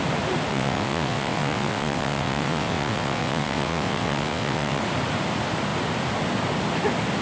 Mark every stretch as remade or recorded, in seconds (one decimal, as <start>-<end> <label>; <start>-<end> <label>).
0.0-0.5 recorded; 0.5-4.8 remade; 4.8-7.2 recorded